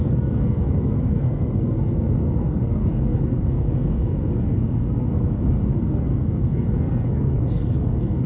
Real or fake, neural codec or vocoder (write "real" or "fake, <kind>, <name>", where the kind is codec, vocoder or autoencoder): fake, codec, SNAC